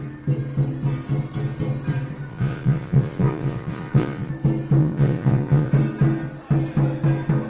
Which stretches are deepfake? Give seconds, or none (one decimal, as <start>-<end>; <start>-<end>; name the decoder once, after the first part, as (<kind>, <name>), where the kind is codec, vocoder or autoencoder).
2.3-4.3 (vocoder, Vocos); 4.8-5.7